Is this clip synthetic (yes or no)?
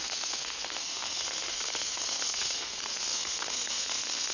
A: yes